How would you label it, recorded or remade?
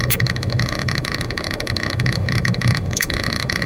remade